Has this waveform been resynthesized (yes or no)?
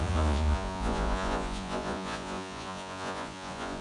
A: yes